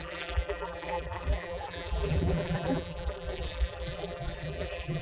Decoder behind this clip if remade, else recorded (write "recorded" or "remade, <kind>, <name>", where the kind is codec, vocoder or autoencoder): remade, vocoder, BigVGAN v2